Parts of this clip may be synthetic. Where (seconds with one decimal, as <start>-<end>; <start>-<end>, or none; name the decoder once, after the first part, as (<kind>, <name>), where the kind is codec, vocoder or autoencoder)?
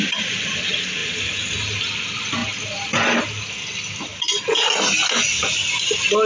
none